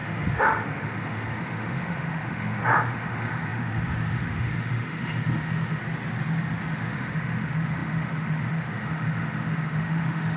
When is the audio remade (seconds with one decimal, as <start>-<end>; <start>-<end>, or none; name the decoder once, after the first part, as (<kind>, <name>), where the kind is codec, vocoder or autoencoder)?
0.0-5.8 (autoencoder, DAC-VAE); 6.6-10.4